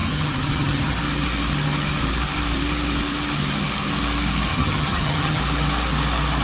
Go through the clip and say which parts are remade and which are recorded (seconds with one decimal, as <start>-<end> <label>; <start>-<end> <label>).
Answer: 0.0-1.0 remade; 1.0-4.5 recorded; 4.5-5.4 remade; 5.4-6.4 recorded